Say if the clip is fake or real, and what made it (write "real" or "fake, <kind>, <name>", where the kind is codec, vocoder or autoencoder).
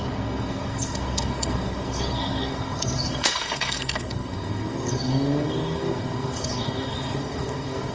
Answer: fake, codec, SNAC